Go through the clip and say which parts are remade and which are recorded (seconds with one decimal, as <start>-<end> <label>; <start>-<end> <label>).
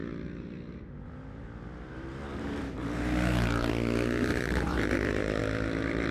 0.0-3.7 remade; 3.7-4.3 recorded; 4.3-5.4 remade; 5.4-6.1 recorded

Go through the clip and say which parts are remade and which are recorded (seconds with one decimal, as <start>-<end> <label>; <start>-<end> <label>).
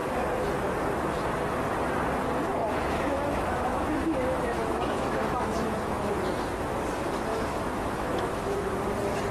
0.0-2.6 recorded; 2.6-6.1 remade; 6.1-7.3 recorded; 7.3-8.7 remade; 8.7-9.3 recorded